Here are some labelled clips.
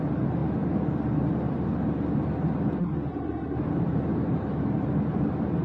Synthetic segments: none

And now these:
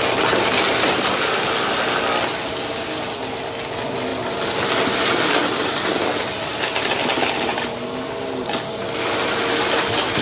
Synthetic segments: none

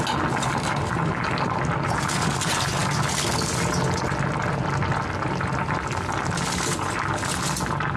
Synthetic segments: none

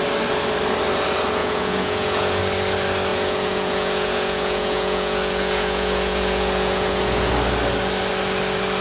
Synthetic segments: 1.4-2.4; 3.1-7.3

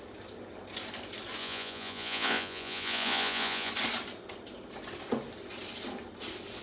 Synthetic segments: 1.4-3.7

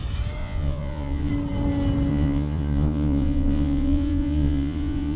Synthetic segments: 0.4-1.3; 2.1-5.2

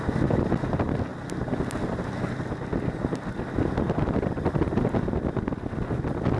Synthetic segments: none